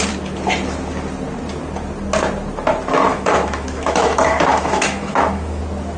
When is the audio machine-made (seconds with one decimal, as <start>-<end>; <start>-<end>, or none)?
3.1-5.6